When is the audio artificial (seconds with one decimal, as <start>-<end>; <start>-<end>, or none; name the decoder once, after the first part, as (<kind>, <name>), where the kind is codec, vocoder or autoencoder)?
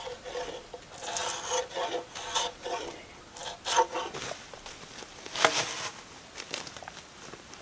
none